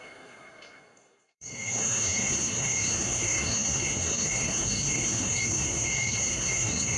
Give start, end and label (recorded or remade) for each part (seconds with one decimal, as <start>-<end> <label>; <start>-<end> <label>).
0.0-7.0 remade